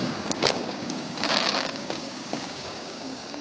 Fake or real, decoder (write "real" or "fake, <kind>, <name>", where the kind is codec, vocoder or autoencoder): fake, codec, DAC